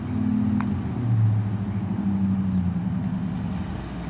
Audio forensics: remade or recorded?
recorded